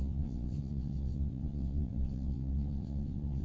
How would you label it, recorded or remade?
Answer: remade